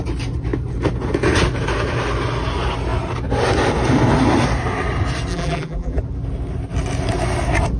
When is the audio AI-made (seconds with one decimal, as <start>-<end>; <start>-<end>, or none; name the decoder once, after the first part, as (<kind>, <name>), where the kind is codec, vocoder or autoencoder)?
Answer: 5.3-6.0 (vocoder, BigVGAN v2)